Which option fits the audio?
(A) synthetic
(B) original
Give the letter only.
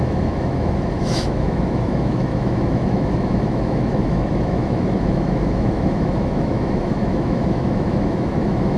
A